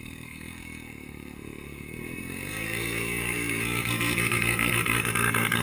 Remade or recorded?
remade